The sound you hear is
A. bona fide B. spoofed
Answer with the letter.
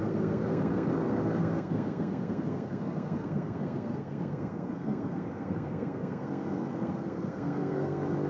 B